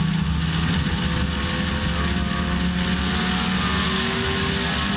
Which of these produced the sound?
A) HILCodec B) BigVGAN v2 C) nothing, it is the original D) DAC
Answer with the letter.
C